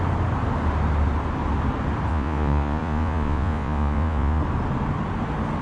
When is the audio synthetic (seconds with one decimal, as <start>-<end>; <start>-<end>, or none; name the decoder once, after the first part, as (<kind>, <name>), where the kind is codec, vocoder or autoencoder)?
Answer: 2.1-4.4 (vocoder, Vocos)